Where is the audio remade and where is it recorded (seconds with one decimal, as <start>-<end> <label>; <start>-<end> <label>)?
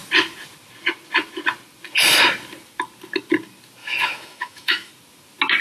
0.0-3.8 recorded; 3.8-4.9 remade; 4.9-5.6 recorded